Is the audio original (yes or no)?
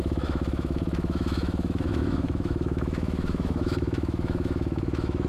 no